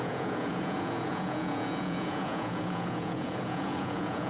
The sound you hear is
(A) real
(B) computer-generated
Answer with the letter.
B